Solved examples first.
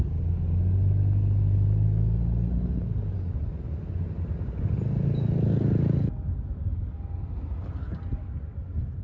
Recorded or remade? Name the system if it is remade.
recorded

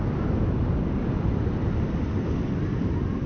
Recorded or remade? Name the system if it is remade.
recorded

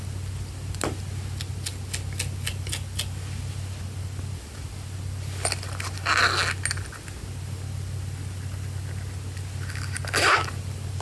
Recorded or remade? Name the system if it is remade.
recorded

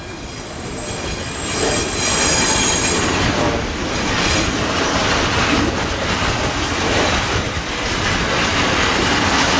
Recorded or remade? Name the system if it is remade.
recorded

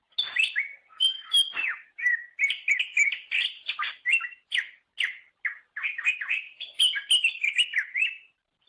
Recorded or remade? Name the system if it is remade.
recorded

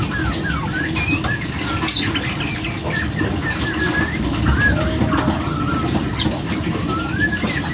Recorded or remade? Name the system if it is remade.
recorded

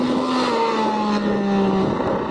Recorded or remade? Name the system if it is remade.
recorded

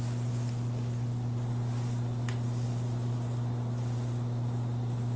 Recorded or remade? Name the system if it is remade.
recorded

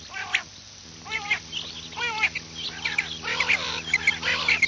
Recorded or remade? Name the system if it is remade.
recorded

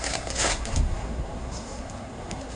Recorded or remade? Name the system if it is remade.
remade, codec, SNAC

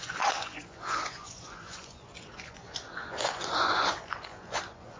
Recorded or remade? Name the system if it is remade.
remade, vocoder, Vocos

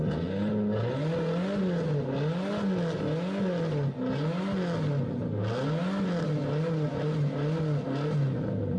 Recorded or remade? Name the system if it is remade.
recorded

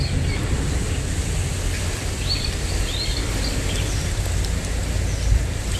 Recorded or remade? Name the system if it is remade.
recorded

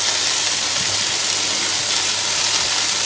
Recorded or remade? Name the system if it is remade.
recorded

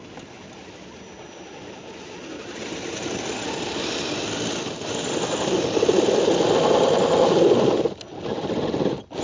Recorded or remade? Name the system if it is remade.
recorded